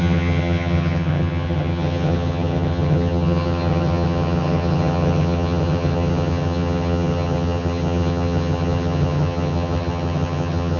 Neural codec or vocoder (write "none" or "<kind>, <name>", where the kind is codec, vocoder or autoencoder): vocoder, HiFi-GAN